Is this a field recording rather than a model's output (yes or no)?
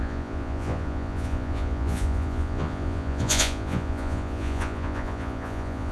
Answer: no